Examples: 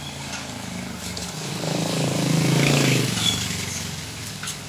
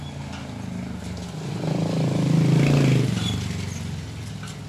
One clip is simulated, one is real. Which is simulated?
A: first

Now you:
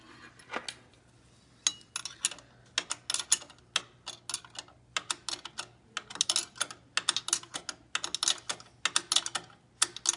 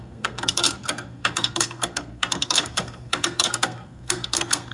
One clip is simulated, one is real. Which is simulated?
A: second